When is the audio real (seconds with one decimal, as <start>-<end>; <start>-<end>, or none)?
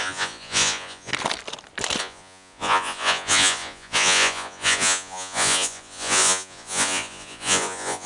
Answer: 1.1-2.0